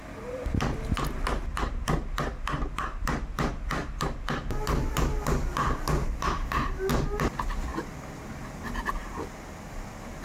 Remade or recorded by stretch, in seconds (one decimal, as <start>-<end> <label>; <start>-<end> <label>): 0.0-6.0 recorded; 6.0-6.9 remade; 6.9-10.2 recorded